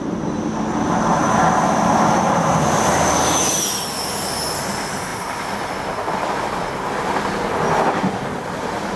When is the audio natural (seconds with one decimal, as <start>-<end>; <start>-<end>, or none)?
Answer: 0.0-9.0